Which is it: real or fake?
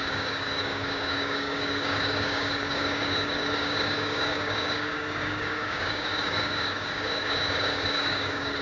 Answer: fake